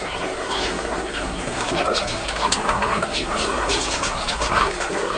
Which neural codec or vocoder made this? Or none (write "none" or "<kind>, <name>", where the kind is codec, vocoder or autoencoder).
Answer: codec, SNAC